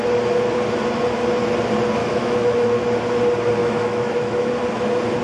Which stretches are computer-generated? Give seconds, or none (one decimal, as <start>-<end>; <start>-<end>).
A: 2.0-2.8; 3.6-4.5

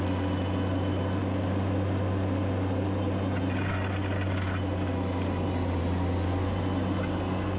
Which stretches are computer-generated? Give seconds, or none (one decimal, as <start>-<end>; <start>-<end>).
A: none

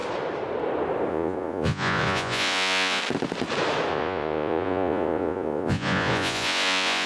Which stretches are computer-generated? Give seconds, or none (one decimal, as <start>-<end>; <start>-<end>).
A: 1.1-3.0; 3.9-7.1

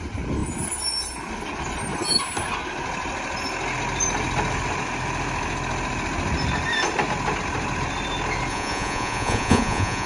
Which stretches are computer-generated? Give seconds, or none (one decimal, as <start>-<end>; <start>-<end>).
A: 8.5-10.1

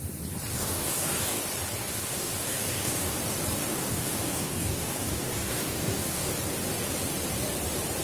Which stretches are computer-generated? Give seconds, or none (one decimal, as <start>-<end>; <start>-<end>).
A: 0.5-1.4; 1.8-3.1; 3.6-6.3

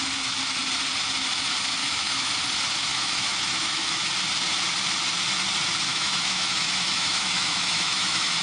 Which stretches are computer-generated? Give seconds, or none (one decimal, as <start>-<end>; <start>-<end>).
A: 1.8-2.4; 2.9-4.1; 5.9-8.4

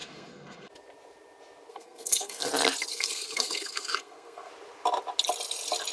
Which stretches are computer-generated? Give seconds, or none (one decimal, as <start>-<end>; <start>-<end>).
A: 0.0-0.7; 1.7-2.5; 2.9-4.5